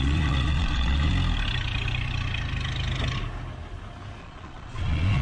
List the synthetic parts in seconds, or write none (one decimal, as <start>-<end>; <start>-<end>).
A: 0.0-1.1; 4.2-5.2